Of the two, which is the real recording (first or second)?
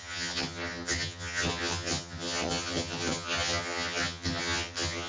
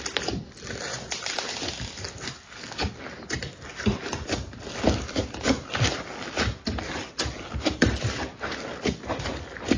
second